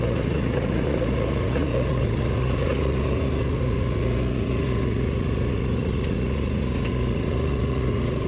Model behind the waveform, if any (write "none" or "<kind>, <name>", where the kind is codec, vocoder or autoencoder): vocoder, Vocos